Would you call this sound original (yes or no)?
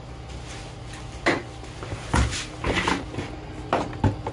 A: yes